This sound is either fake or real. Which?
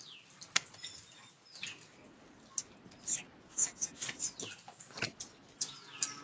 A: real